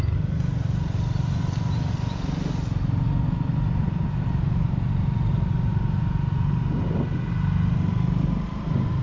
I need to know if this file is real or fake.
real